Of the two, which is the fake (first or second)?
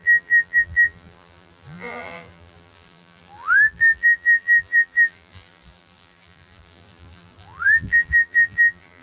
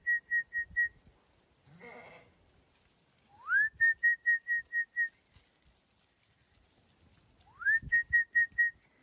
first